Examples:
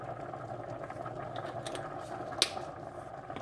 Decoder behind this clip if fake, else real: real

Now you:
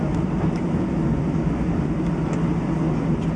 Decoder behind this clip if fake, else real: real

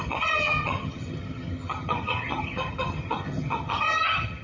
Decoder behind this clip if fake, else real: fake, vocoder, HiFi-GAN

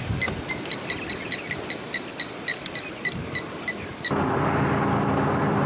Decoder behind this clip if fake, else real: fake, vocoder, BigVGAN v2